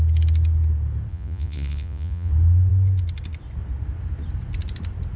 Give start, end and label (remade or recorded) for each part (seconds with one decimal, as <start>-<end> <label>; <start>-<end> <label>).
0.0-1.1 recorded; 1.1-2.3 remade; 2.3-5.2 recorded